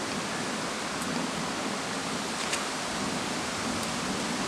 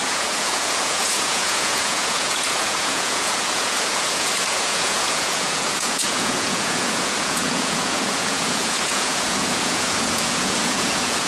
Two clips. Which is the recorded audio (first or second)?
first